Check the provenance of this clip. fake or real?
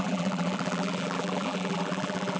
fake